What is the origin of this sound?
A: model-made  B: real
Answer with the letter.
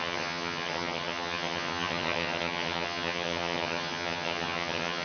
A